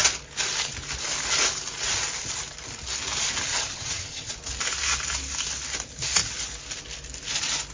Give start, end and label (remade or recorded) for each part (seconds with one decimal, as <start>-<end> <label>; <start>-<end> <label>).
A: 0.0-3.5 recorded; 3.5-4.3 remade; 4.3-7.7 recorded